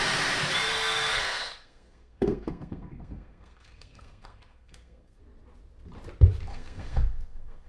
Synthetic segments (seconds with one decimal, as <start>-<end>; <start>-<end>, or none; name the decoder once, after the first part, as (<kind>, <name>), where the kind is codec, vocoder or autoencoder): 0.7-5.2 (codec, SNAC); 6.5-7.7